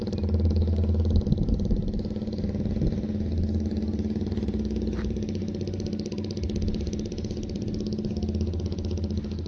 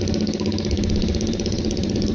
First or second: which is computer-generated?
second